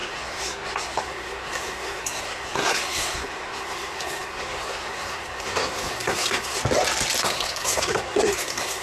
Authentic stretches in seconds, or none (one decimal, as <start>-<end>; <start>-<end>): 6.6-7.2